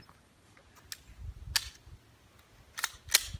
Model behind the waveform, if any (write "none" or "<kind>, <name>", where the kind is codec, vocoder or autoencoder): none